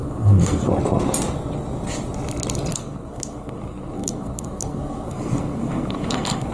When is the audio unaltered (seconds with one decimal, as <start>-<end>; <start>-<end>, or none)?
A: 0.7-2.7